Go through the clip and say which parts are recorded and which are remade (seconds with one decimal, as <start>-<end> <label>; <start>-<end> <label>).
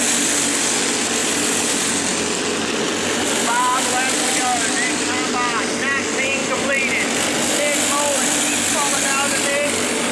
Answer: 0.0-1.2 recorded; 1.2-2.0 remade; 2.0-10.1 recorded